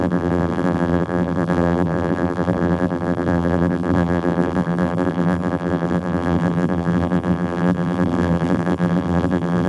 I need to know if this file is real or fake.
fake